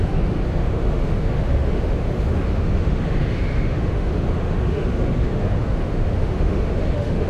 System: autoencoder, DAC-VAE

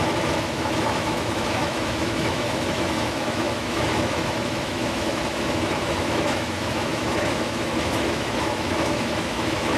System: autoencoder, DAC-VAE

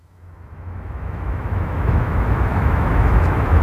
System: autoencoder, DAC-VAE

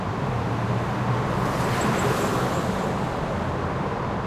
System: none